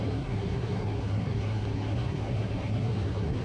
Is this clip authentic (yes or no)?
no